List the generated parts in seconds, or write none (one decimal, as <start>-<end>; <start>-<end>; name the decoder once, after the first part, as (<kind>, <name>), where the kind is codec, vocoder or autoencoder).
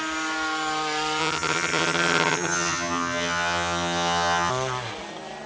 1.2-4.5 (vocoder, HiFi-GAN)